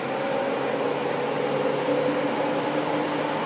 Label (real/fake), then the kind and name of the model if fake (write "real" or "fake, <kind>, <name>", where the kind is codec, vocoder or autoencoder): real